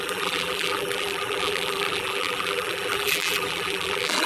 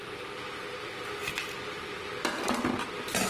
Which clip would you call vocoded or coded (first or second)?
first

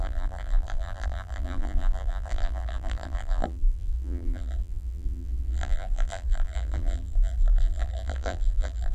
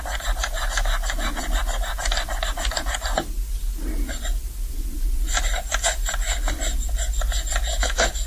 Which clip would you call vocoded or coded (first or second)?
first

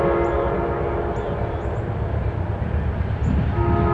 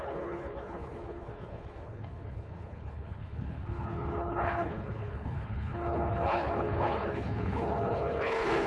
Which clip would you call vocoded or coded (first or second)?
second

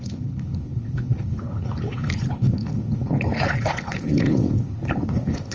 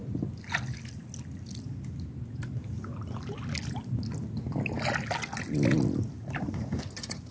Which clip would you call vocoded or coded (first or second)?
first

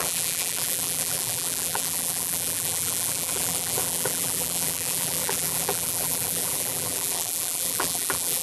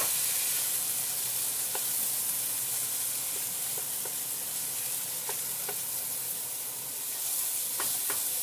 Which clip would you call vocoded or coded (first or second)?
first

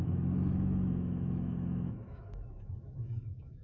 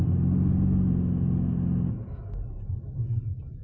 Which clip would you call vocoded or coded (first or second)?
first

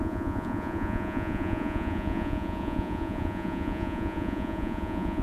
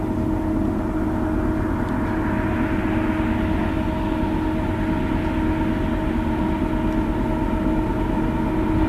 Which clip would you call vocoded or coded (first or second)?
first